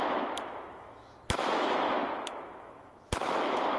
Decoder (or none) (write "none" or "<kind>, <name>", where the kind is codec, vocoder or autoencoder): autoencoder, DAC-VAE